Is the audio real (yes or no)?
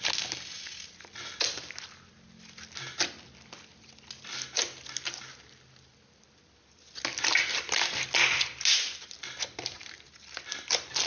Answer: yes